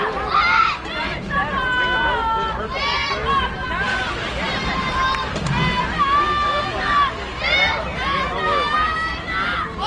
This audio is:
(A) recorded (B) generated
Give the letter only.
A